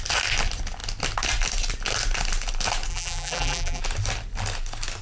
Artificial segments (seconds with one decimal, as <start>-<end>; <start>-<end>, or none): 2.9-3.8